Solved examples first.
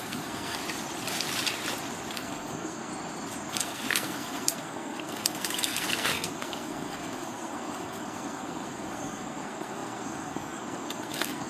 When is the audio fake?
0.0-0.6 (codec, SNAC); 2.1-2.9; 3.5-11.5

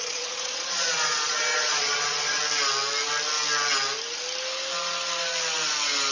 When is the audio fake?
0.0-2.4 (vocoder, Vocos)

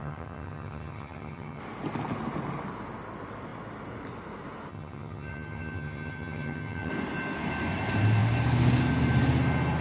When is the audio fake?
0.0-1.6 (vocoder, HiFi-GAN); 4.7-6.9

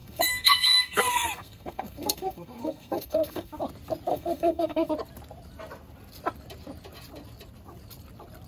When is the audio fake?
0.0-3.6 (codec, SNAC); 4.1-4.9

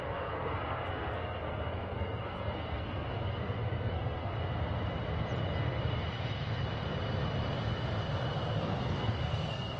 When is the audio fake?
0.0-4.3 (codec, SNAC); 8.6-9.8

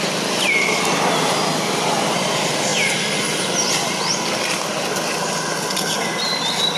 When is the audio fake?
none